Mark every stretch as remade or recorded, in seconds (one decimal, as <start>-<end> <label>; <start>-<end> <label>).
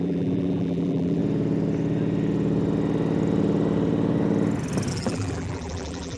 0.0-1.2 remade; 1.2-4.9 recorded; 4.9-6.2 remade